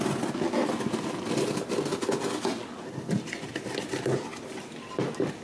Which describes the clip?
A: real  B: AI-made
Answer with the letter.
A